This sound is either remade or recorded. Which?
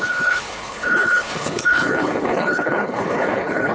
remade